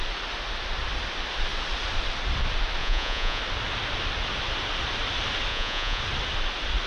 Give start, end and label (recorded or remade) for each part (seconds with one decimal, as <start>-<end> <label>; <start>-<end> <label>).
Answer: 0.0-2.8 recorded; 2.8-3.4 remade; 3.4-5.5 recorded; 5.5-6.0 remade; 6.0-6.9 recorded

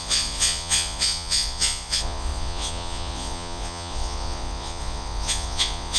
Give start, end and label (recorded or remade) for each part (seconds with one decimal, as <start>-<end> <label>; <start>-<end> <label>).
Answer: 0.0-6.0 remade

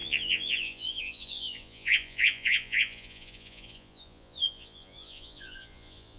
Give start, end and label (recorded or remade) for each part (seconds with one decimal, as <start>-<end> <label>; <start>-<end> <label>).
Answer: 0.0-6.2 remade

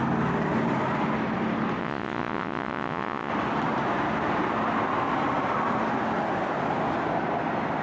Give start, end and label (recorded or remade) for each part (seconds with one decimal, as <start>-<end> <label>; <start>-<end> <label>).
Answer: 0.0-1.8 recorded; 1.8-3.3 remade; 3.3-7.8 recorded

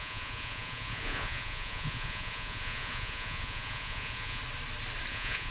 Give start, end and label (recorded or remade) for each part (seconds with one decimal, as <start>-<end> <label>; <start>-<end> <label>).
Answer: 0.0-4.4 remade; 4.4-5.1 recorded; 5.1-5.5 remade

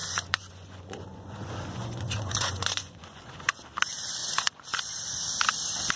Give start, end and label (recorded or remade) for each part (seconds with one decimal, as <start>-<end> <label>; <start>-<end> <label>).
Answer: 0.0-3.6 remade; 3.6-4.2 recorded; 4.2-5.2 remade; 5.2-6.0 recorded

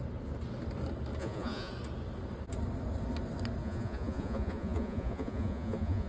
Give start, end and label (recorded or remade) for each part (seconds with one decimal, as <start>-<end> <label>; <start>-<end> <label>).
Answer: 0.0-1.2 recorded; 1.2-1.7 remade; 1.7-3.6 recorded; 3.6-6.1 remade

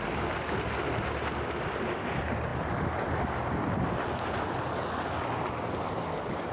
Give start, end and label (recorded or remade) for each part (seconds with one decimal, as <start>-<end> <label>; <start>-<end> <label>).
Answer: 0.0-6.5 recorded